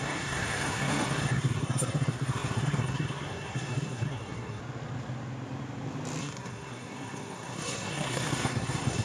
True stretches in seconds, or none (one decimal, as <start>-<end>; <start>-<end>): 4.6-6.2